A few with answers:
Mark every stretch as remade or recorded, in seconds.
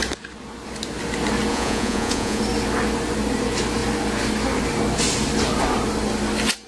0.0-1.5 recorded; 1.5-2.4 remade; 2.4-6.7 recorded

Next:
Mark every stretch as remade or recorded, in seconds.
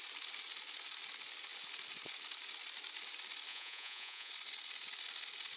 0.0-3.5 recorded; 3.5-4.3 remade; 4.3-5.6 recorded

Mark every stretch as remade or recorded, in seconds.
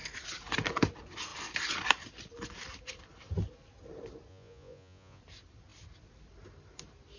0.0-4.3 recorded; 4.3-5.2 remade; 5.2-7.2 recorded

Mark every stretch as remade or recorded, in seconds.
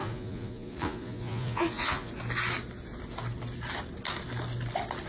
0.0-2.1 remade; 2.1-5.1 recorded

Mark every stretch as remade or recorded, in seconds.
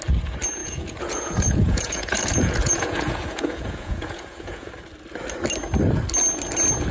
0.0-0.6 recorded; 0.6-4.7 remade; 4.7-6.9 recorded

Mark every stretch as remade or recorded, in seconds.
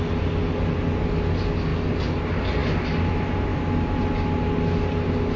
0.0-5.4 recorded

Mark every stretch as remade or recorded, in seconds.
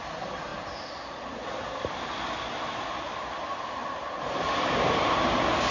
0.0-5.7 recorded